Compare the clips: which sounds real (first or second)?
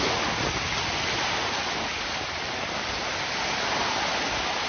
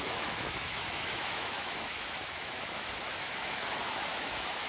first